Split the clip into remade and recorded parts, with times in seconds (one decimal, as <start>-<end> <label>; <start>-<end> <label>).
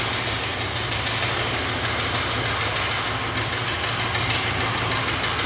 0.0-5.5 recorded